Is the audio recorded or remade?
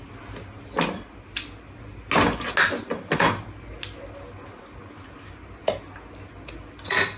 recorded